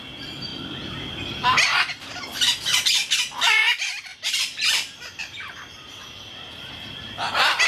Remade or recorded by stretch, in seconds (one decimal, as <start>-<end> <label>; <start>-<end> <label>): 0.0-4.1 recorded; 4.1-7.7 remade